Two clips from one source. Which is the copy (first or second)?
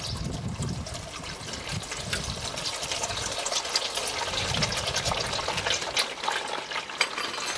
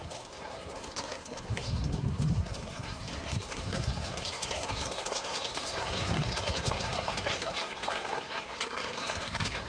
second